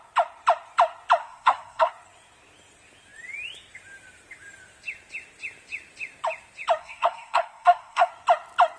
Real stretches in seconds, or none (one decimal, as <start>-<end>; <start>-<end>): 0.0-1.2; 1.9-6.8; 8.1-8.8

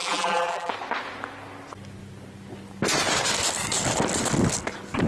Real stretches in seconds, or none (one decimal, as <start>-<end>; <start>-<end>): 0.7-5.1